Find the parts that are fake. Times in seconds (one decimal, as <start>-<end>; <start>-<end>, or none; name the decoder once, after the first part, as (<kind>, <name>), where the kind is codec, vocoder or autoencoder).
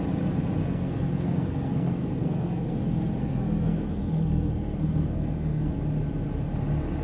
0.6-2.8 (codec, SNAC); 3.2-5.7